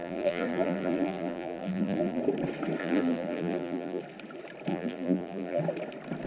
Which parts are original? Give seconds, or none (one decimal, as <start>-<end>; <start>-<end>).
2.2-2.8; 4.0-4.7; 5.6-6.3